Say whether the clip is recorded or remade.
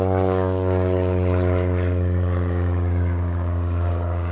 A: remade